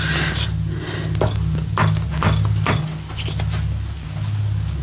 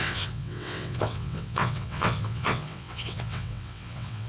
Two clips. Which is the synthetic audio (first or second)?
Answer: second